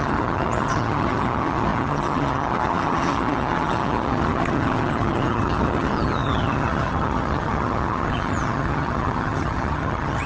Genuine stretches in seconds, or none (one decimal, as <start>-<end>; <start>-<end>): none